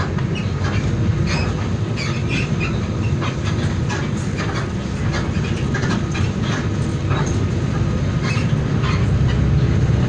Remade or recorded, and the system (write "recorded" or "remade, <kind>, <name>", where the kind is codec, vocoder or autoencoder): recorded